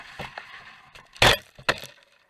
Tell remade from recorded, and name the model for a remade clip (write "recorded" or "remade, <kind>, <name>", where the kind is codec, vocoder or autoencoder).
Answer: recorded